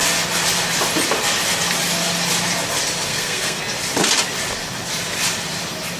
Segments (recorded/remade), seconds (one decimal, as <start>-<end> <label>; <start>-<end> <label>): 0.0-3.1 recorded; 3.1-3.6 remade; 3.6-6.0 recorded